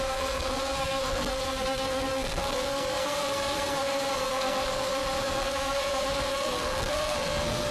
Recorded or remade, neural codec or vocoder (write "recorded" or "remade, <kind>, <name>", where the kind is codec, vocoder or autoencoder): remade, codec, SNAC